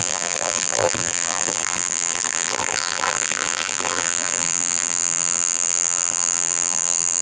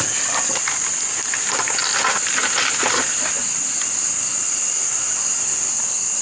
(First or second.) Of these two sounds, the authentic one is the second